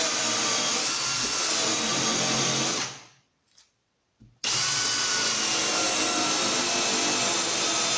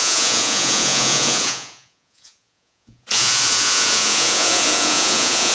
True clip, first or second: first